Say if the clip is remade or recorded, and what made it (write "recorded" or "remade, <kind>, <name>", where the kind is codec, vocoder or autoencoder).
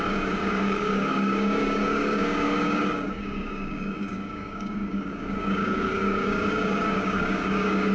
remade, codec, DAC